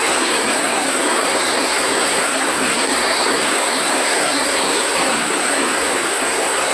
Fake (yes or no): yes